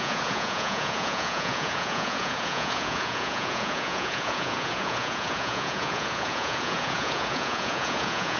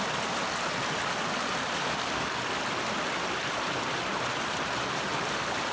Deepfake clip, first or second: first